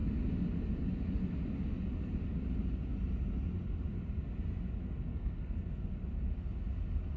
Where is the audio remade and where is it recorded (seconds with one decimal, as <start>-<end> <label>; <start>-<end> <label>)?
0.0-5.1 recorded; 5.1-5.9 remade; 5.9-7.2 recorded